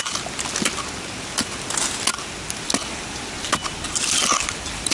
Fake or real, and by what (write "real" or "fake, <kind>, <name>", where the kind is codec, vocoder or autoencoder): real